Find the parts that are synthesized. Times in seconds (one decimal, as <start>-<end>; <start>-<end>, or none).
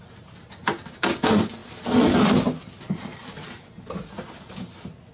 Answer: none